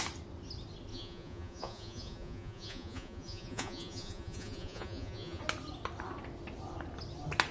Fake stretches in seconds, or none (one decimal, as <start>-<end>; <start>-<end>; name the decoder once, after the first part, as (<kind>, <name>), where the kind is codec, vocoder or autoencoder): 0.9-5.4 (vocoder, Vocos)